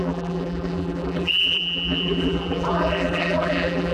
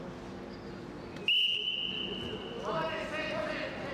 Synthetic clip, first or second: first